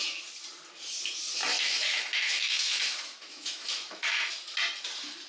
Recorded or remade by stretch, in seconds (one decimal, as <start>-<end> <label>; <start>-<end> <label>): 0.0-1.4 recorded; 1.4-4.3 remade; 4.3-5.3 recorded